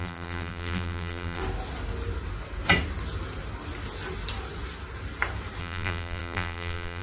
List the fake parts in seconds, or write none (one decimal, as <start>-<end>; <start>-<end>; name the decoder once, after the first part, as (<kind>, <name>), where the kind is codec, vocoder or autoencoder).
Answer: 0.0-1.4 (vocoder, BigVGAN v2); 5.6-7.0